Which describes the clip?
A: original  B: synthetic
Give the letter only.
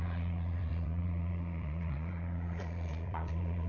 B